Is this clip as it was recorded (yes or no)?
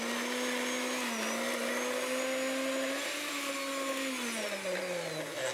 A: yes